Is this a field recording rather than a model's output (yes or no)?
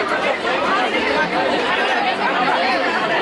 no